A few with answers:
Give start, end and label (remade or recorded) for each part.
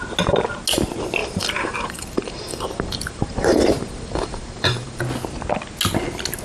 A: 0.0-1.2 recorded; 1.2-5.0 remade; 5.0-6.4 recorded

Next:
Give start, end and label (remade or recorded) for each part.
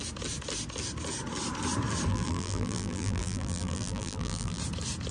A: 0.0-2.1 recorded; 2.1-4.6 remade; 4.6-5.1 recorded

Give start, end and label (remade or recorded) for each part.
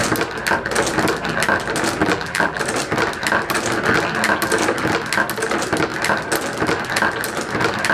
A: 0.0-2.0 recorded; 2.0-2.6 remade; 2.6-7.9 recorded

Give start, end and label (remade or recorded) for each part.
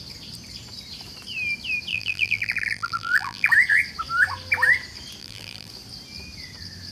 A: 0.0-1.9 recorded; 1.9-3.5 remade; 3.5-5.2 recorded; 5.2-5.7 remade; 5.7-6.9 recorded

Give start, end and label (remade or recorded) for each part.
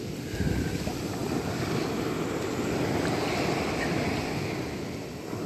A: 0.0-5.5 recorded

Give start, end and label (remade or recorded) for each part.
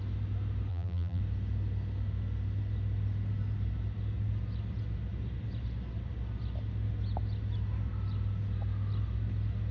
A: 0.0-0.7 recorded; 0.7-1.2 remade; 1.2-9.7 recorded